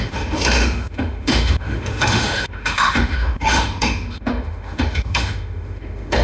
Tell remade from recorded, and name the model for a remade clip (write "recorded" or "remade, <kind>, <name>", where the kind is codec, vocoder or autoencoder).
remade, autoencoder, DAC-VAE